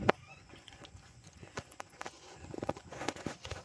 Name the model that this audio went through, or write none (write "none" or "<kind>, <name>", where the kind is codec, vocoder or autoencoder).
vocoder, Vocos